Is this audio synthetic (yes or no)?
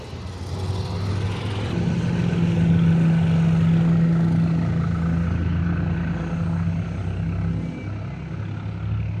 no